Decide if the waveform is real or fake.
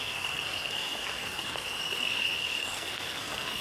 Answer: fake